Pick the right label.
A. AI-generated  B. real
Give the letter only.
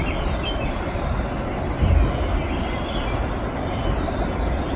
B